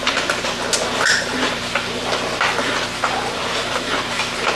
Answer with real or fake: real